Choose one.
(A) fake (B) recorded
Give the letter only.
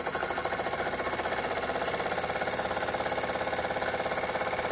B